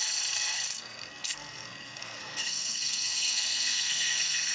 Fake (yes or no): yes